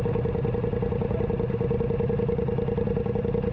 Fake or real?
real